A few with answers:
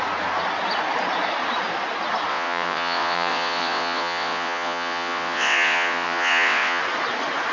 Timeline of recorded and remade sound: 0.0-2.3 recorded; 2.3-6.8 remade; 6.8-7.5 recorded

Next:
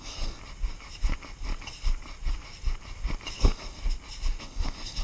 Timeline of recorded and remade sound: 0.0-0.4 remade; 0.4-3.4 recorded; 3.4-3.8 remade; 3.8-4.4 recorded; 4.4-5.0 remade

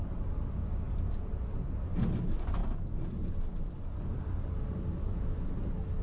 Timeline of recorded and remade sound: 0.0-6.0 recorded

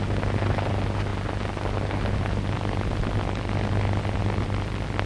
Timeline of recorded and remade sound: 0.0-5.1 recorded